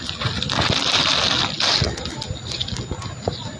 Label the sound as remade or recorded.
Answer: recorded